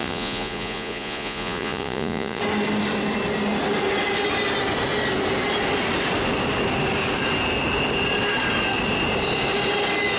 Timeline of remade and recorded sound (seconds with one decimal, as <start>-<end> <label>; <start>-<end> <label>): 0.0-2.4 remade; 2.4-10.2 recorded